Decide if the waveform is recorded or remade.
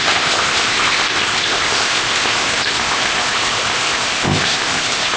remade